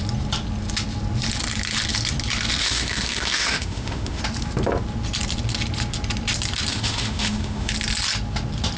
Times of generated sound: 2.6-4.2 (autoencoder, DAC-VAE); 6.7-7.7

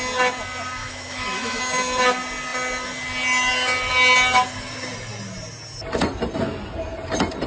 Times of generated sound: 0.8-1.6 (autoencoder, DAC-VAE)

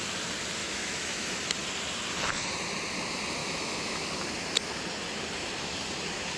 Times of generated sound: 0.6-1.3 (autoencoder, DAC-VAE); 3.4-4.0

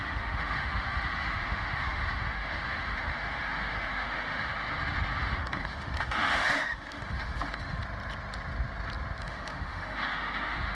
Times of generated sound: 0.0-4.5 (autoencoder, DAC-VAE); 5.2-7.8; 9.2-10.7

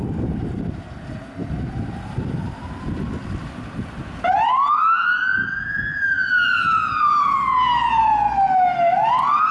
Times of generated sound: none

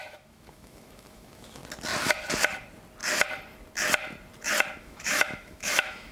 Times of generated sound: 0.0-1.6 (autoencoder, DAC-VAE); 4.8-6.1

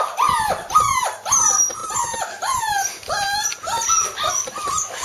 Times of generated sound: none

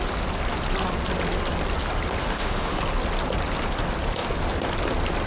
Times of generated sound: 2.2-2.8 (autoencoder, DAC-VAE)